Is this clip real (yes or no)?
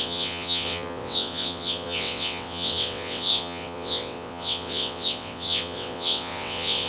no